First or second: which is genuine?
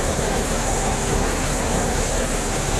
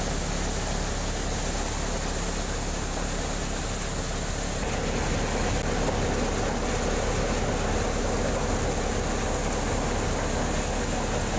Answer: second